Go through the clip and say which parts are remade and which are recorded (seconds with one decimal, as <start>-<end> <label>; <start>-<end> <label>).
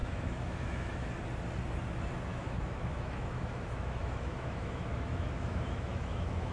0.0-1.1 remade; 1.1-2.3 recorded; 2.3-6.5 remade